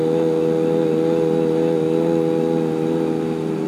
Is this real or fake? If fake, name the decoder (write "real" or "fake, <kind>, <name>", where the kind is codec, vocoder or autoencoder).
real